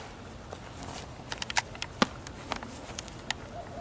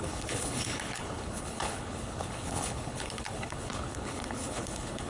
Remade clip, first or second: second